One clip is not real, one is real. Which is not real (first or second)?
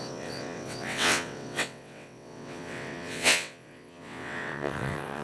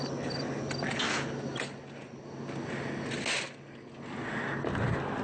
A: first